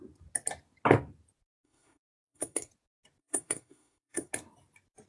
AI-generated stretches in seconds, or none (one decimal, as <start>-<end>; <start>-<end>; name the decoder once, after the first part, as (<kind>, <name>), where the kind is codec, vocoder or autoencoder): 1.6-2.7 (codec, SNAC); 3.2-4.3